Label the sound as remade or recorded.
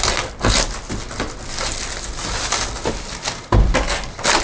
recorded